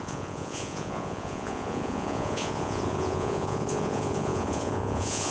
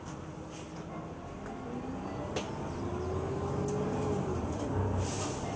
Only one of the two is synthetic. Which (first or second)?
first